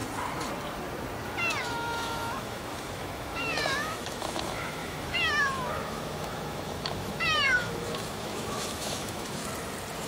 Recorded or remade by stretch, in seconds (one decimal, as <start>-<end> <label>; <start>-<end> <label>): 0.0-1.6 recorded; 1.6-9.4 remade; 9.4-10.1 recorded

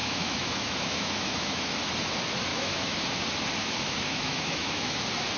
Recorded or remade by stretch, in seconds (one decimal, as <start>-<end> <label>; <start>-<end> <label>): 0.0-1.7 remade; 1.7-2.5 recorded; 2.5-3.0 remade; 3.0-3.6 recorded; 3.6-5.0 remade; 5.0-5.4 recorded